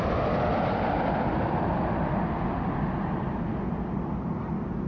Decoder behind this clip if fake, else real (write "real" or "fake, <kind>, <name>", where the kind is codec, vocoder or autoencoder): real